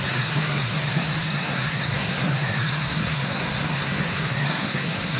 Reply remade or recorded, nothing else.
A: remade